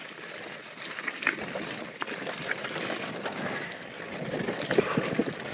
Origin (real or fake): real